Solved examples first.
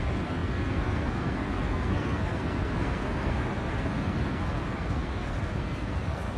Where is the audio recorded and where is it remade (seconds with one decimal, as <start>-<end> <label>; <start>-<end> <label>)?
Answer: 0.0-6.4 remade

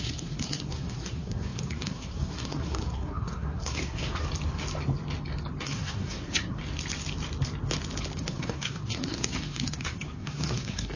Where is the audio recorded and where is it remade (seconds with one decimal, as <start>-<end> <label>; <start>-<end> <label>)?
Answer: 0.0-4.2 remade; 4.2-5.6 recorded; 5.6-6.6 remade; 6.6-8.2 recorded; 8.2-11.0 remade

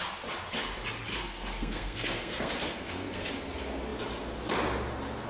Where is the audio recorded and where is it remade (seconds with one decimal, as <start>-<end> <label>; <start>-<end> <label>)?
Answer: 0.0-1.1 recorded; 1.1-3.3 remade; 3.3-5.3 recorded

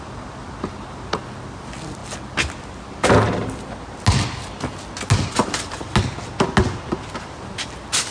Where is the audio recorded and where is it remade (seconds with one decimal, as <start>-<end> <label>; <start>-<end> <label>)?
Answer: 0.0-8.1 recorded

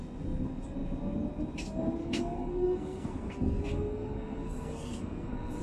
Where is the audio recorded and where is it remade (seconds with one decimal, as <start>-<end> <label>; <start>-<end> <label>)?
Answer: 0.0-2.0 recorded; 2.0-5.6 remade

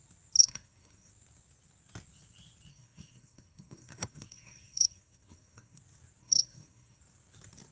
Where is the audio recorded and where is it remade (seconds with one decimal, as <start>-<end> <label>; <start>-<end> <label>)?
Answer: 0.0-0.4 recorded; 0.4-1.1 remade; 1.1-2.7 recorded; 2.7-5.8 remade; 5.8-6.2 recorded; 6.2-7.0 remade; 7.0-7.7 recorded

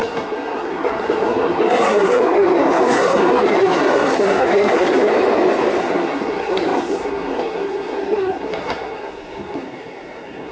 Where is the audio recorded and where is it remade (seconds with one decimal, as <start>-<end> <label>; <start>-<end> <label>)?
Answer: 0.0-5.1 remade; 5.1-5.8 recorded; 5.8-10.5 remade